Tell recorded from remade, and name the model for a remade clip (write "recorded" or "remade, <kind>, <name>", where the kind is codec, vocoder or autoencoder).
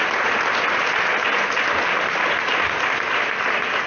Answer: recorded